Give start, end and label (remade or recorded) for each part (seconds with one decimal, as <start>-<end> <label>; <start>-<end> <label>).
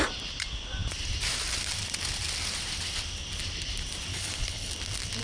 0.0-4.1 recorded; 4.1-4.7 remade; 4.7-5.2 recorded